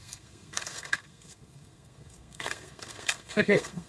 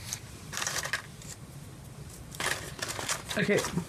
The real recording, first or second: second